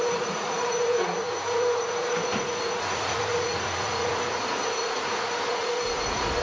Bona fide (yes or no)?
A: no